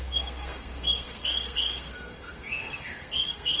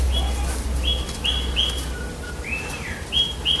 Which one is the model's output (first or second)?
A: first